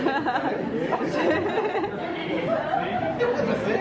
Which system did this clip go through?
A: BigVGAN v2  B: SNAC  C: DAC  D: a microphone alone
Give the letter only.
A